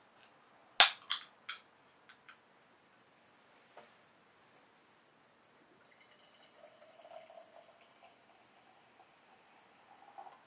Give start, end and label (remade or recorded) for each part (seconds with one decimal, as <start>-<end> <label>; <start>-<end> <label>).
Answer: 0.0-10.5 recorded